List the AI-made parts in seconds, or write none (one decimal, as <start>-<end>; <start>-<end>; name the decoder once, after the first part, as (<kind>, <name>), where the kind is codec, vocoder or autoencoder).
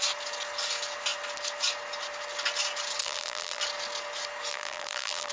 3.0-3.6 (vocoder, BigVGAN v2); 4.5-5.3